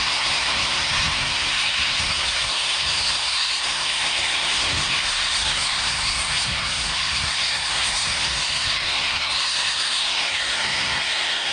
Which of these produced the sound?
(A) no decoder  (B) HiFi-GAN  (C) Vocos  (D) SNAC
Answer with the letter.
D